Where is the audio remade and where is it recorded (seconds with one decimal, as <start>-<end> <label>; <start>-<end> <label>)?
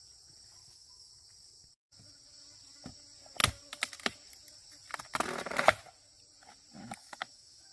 0.0-0.6 recorded; 0.6-1.1 remade; 1.1-7.0 recorded; 7.0-7.7 remade